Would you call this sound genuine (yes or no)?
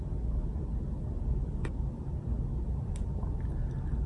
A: yes